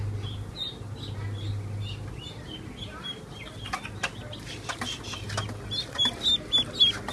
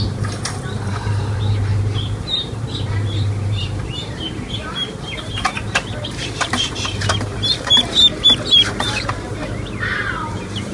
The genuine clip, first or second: first